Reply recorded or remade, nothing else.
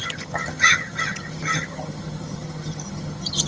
remade